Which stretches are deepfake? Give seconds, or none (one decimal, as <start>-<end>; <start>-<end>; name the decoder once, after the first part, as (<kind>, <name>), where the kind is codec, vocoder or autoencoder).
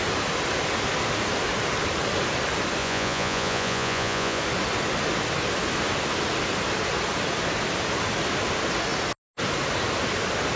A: 2.8-4.4 (vocoder, Vocos)